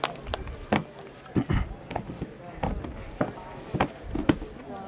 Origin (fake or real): real